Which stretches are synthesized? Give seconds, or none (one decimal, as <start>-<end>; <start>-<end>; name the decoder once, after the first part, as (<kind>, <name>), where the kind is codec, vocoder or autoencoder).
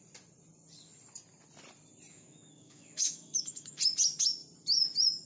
2.1-3.8 (autoencoder, DAC-VAE)